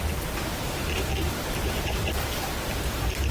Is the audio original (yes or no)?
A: no